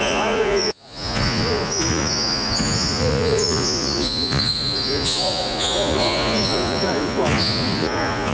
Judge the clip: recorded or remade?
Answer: remade